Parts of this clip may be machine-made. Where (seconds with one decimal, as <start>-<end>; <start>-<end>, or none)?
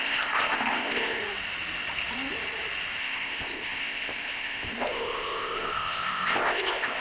0.0-1.2; 3.0-7.0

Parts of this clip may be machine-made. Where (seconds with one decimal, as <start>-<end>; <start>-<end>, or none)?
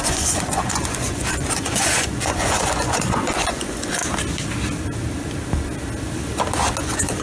0.0-4.0; 6.8-7.2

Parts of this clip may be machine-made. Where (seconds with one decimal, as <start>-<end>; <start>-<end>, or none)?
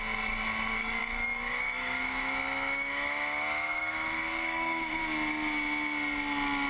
1.0-5.0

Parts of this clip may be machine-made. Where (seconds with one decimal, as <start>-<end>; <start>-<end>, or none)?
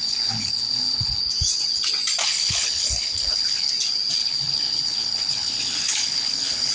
0.0-1.2; 2.2-3.7; 4.2-6.7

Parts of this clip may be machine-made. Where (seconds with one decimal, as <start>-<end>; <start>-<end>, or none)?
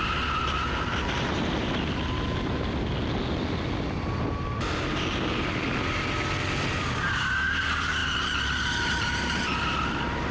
8.0-8.6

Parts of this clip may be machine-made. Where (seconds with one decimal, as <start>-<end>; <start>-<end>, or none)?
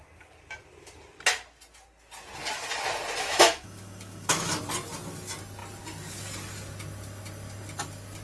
3.2-4.6